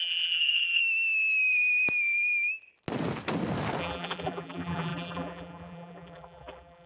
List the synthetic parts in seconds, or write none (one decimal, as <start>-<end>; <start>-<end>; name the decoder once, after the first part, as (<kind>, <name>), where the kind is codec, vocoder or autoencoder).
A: 0.0-0.8 (vocoder, BigVGAN v2); 3.8-6.9